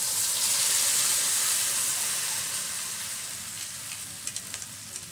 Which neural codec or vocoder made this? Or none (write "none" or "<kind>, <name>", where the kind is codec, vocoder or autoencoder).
none